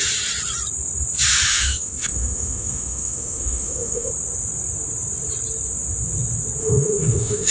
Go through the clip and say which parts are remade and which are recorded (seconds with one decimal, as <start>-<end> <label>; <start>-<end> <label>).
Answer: 0.0-1.5 recorded; 1.5-4.1 remade; 4.1-6.6 recorded; 6.6-7.5 remade